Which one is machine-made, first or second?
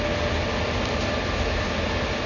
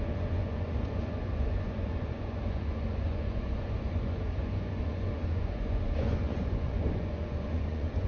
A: second